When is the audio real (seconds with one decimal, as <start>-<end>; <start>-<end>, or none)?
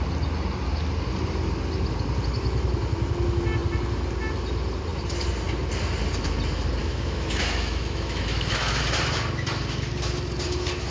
0.0-6.8; 8.8-10.9